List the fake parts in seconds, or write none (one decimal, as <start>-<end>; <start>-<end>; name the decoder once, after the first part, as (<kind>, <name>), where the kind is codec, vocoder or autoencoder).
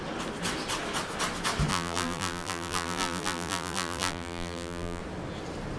1.7-5.0 (vocoder, BigVGAN v2)